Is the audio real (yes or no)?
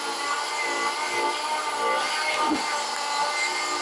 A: yes